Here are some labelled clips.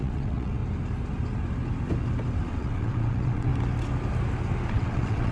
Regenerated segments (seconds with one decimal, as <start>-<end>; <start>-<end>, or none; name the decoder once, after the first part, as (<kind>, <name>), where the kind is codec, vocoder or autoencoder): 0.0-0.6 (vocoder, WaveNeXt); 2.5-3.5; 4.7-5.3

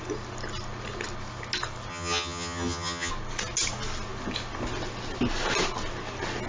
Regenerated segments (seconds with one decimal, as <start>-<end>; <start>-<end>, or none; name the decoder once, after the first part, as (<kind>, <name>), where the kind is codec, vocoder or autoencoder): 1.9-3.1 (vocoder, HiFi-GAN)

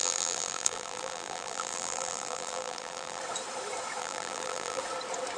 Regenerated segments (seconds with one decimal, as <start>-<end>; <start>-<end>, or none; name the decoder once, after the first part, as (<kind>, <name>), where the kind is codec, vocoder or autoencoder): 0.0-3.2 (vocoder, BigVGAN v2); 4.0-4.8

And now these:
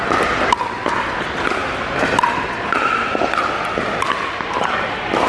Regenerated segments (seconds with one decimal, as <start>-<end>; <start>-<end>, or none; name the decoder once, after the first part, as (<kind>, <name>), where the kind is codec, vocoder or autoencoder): none

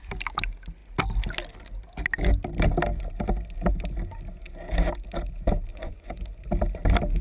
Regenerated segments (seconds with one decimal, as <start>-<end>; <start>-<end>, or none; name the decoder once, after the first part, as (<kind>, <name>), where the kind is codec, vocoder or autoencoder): 5.7-6.2 (vocoder, Vocos)

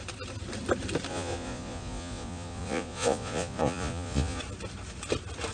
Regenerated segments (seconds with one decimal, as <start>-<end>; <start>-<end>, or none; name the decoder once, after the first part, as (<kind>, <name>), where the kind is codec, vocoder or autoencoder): 1.1-4.4 (vocoder, Vocos)

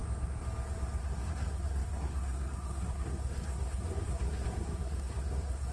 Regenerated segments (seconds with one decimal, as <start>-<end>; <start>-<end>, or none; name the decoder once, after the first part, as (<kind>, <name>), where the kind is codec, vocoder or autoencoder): 1.0-5.7 (codec, SNAC)